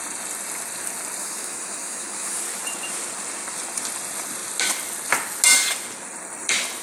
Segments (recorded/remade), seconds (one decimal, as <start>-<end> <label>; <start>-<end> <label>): 0.0-1.2 recorded; 1.2-2.4 remade; 2.4-6.8 recorded